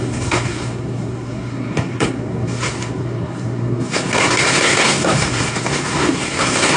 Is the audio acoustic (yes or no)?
no